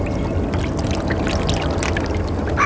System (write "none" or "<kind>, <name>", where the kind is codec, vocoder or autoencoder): none